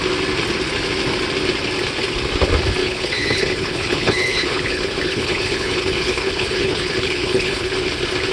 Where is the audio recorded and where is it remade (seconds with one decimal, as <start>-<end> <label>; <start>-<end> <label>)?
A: 0.0-2.8 recorded; 2.8-7.7 remade; 7.7-8.3 recorded